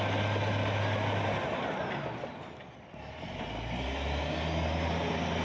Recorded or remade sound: recorded